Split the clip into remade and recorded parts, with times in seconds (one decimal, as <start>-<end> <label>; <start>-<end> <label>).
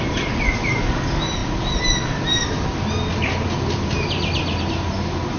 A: 0.0-5.4 recorded